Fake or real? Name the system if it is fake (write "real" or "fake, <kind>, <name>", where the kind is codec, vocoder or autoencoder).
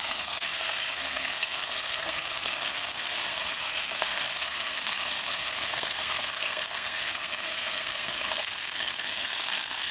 fake, codec, SNAC